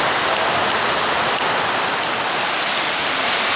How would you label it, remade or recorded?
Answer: recorded